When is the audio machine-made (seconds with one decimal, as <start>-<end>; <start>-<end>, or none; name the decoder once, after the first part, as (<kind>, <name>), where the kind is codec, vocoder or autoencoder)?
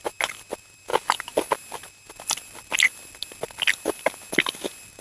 0.9-1.5 (vocoder, BigVGAN v2)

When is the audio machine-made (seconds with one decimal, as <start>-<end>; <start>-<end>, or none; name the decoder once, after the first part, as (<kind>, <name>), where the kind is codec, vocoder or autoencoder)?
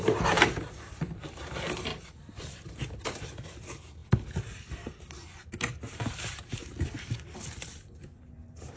0.0-1.9 (vocoder, BigVGAN v2); 2.4-6.6; 8.2-8.8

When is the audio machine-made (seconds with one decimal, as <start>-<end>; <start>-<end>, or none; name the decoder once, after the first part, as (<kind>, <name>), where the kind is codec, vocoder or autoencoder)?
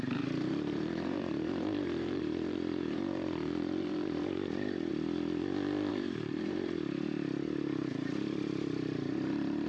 0.0-4.9 (vocoder, BigVGAN v2); 5.9-9.7